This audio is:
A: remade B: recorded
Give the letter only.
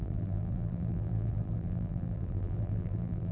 A